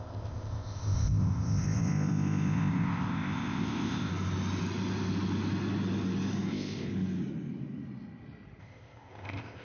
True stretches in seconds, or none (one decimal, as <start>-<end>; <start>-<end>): 4.1-6.5; 6.9-8.6